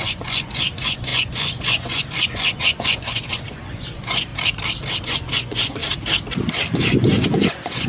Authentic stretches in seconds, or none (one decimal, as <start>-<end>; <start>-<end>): 4.3-5.0; 5.8-6.7